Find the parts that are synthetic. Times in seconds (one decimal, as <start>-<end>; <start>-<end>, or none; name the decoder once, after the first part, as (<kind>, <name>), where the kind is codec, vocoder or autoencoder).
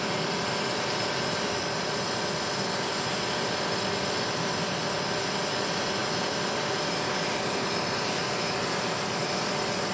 none